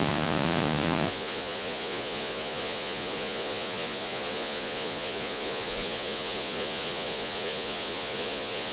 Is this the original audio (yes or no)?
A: no